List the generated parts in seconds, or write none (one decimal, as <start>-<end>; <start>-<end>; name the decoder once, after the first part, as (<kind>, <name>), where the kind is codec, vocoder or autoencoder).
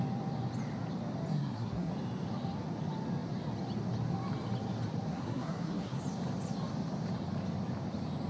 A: 1.3-1.9 (codec, SNAC); 5.1-6.0